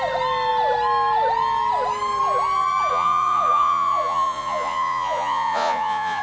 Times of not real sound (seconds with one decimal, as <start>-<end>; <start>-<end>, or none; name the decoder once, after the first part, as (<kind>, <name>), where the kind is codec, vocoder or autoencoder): 2.9-6.2 (vocoder, Vocos)